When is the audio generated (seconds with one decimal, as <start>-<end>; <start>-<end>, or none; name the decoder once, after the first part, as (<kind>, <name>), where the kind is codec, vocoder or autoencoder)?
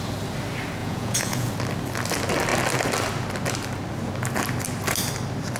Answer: 0.8-1.5 (vocoder, Vocos)